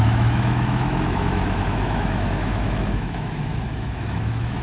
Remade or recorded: remade